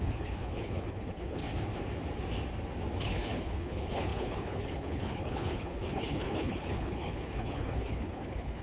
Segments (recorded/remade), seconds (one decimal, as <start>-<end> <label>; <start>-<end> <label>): 0.0-1.4 remade; 1.4-3.0 recorded; 3.0-8.6 remade